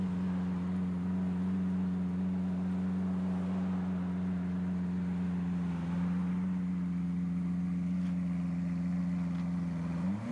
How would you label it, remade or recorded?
recorded